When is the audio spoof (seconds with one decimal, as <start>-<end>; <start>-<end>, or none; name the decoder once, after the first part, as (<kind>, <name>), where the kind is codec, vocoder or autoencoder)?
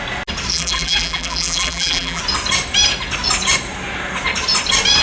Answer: 0.5-2.2 (vocoder, BigVGAN v2)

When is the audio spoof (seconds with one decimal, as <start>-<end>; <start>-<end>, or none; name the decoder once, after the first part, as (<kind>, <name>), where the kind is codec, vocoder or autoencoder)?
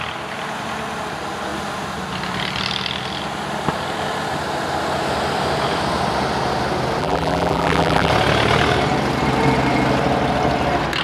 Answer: 7.0-8.1 (vocoder, BigVGAN v2)